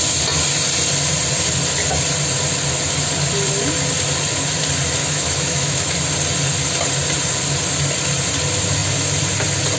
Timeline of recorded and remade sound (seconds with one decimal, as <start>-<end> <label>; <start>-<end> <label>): 0.0-5.0 recorded; 5.0-5.9 remade; 5.9-9.8 recorded